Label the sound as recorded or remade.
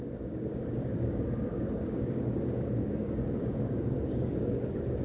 remade